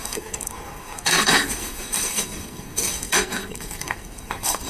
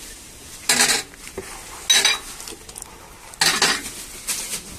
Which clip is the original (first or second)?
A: second